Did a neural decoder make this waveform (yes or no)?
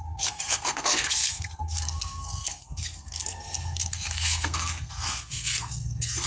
yes